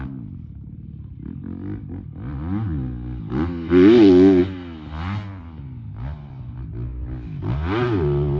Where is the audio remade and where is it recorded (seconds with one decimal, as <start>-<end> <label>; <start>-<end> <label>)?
0.0-8.4 recorded